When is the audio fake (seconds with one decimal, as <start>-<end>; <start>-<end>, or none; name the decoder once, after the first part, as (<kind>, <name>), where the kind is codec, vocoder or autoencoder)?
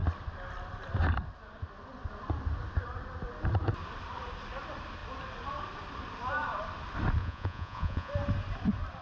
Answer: 7.2-8.1 (vocoder, Vocos)